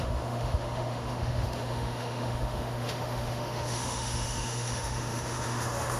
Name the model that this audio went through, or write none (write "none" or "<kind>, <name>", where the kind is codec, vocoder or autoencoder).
autoencoder, DAC-VAE